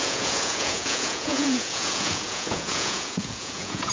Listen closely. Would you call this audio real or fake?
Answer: fake